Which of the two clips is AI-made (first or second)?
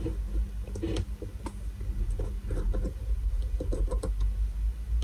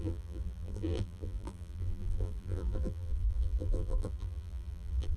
second